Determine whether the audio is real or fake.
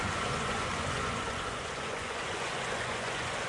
fake